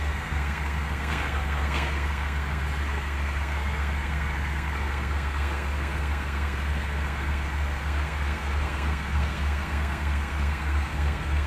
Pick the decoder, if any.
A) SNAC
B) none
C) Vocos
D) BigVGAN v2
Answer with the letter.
A